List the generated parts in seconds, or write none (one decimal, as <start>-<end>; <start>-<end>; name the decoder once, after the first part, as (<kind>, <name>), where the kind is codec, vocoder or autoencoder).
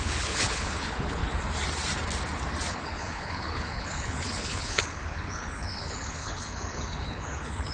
0.0-1.2 (codec, HILCodec); 2.7-7.7